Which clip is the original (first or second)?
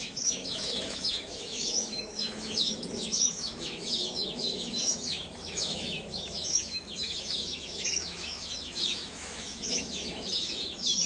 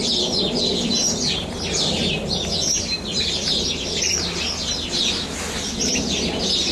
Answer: second